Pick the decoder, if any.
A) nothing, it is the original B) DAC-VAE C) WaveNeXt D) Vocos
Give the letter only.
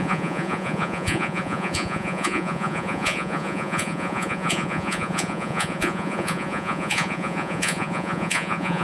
D